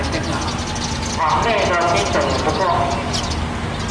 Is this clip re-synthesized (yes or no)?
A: no